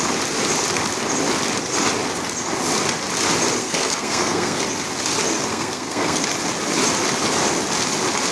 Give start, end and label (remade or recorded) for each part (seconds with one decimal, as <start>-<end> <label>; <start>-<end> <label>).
0.0-3.6 recorded; 3.6-4.6 remade; 4.6-5.5 recorded; 5.5-6.2 remade; 6.2-8.3 recorded